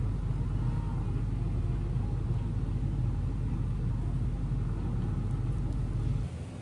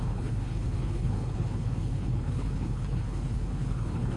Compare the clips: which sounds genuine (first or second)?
first